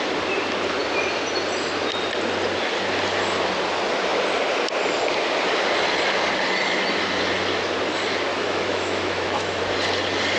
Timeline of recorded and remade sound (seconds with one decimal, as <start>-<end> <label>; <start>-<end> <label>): 0.0-8.3 recorded; 8.3-9.6 remade; 9.6-10.4 recorded